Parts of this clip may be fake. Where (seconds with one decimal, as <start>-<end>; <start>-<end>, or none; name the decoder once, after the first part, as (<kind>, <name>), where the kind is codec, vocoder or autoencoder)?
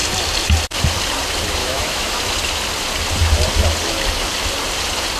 1.6-2.2 (autoencoder, DAC-VAE)